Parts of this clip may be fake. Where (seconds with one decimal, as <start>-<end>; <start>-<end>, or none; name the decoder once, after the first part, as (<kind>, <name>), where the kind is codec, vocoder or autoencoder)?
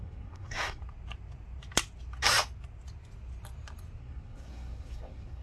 0.0-0.8 (codec, SNAC); 4.0-5.4